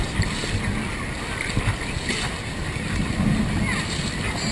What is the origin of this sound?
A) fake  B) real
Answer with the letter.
B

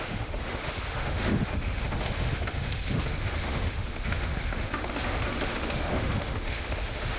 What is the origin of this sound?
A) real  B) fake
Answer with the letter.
B